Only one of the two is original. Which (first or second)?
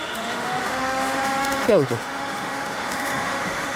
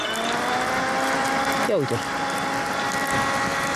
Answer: second